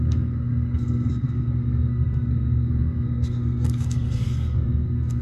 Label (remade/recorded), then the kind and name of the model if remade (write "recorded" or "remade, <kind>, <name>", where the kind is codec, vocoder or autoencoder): remade, codec, SNAC